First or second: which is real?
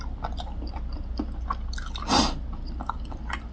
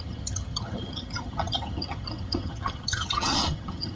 first